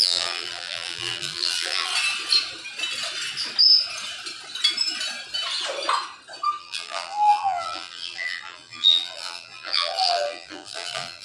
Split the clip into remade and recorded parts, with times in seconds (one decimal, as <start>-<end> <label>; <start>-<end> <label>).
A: 0.0-1.9 remade; 1.9-6.6 recorded; 6.6-11.2 remade